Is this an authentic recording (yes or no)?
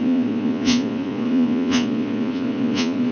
no